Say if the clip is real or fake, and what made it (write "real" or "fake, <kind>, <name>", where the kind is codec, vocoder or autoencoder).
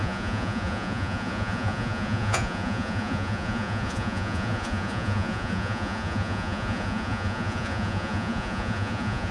fake, vocoder, Vocos